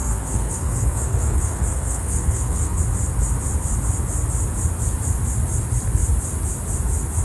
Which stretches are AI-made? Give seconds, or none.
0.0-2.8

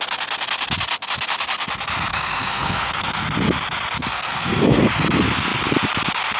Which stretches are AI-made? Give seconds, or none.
2.1-3.2; 4.1-4.9

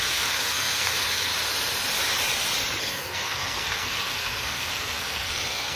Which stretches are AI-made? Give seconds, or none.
0.0-1.3; 2.8-5.8

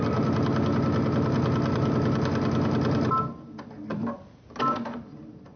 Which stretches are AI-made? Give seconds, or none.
none

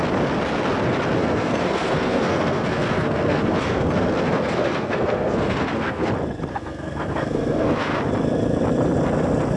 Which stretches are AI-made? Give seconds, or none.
1.2-6.1; 6.5-8.0

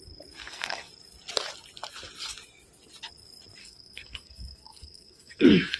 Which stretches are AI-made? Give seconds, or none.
0.4-0.9; 3.6-5.8

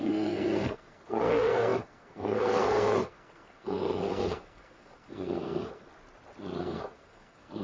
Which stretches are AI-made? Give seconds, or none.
0.0-5.9; 6.6-7.6